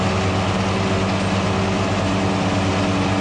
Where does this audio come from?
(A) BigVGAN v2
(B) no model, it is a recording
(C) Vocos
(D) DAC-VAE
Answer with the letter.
B